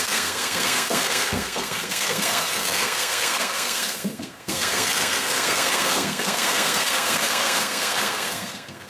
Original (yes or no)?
no